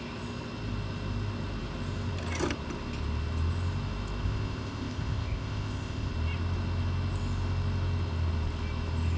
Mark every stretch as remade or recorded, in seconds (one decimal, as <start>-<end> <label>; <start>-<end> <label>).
0.0-4.2 recorded; 4.2-6.1 remade; 6.1-9.2 recorded